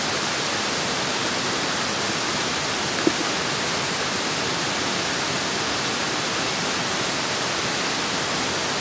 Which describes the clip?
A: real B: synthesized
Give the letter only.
A